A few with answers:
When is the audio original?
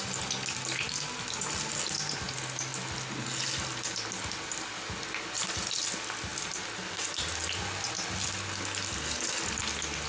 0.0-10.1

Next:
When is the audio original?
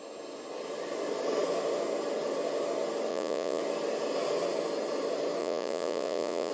0.0-3.1; 3.6-5.4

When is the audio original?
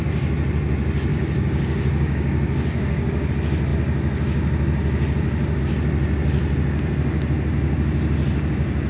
0.0-1.1; 3.3-8.9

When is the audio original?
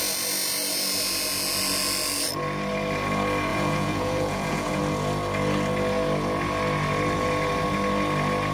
0.0-3.5; 4.8-8.5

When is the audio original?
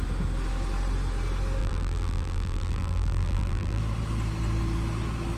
0.0-1.6; 3.8-5.4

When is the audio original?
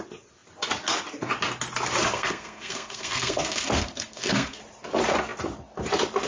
0.0-2.1; 4.6-6.3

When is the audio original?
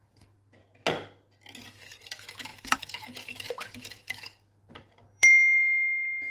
0.6-1.6